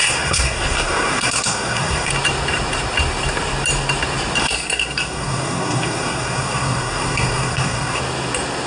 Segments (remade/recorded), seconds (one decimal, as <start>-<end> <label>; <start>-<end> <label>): 0.0-2.1 remade; 2.1-4.4 recorded; 4.4-8.0 remade; 8.0-8.7 recorded